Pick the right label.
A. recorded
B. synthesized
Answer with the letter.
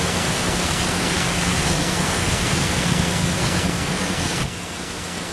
B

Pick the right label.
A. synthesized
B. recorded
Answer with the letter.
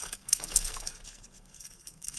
A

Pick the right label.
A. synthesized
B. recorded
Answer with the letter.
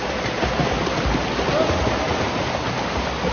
B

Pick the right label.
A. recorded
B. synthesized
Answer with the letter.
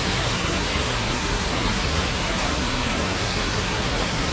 B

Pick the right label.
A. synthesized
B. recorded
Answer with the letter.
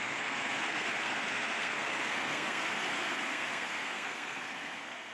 A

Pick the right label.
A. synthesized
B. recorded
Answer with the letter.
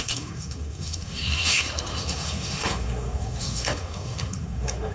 A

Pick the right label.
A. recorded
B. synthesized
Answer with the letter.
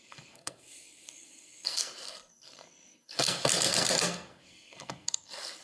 B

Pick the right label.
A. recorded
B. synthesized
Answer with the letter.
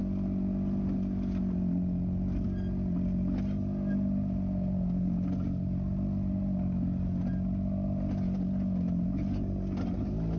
A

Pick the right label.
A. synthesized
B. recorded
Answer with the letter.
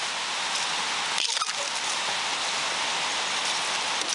B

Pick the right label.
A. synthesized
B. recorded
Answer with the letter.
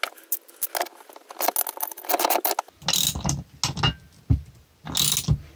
B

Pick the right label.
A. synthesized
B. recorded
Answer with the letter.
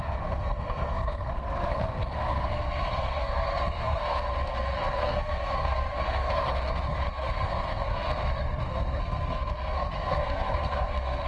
A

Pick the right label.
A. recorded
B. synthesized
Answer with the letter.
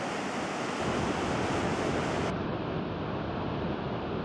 A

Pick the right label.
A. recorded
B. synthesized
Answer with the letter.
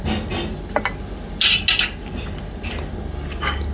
A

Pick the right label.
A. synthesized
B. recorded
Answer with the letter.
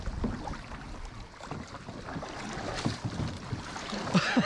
B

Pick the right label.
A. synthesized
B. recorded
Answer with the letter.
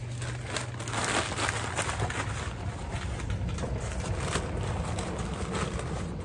B